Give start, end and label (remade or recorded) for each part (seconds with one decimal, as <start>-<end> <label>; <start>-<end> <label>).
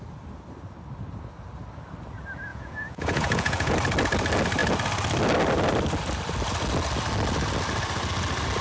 0.0-2.5 recorded; 2.5-3.7 remade; 3.7-8.6 recorded